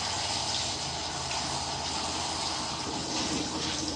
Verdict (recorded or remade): recorded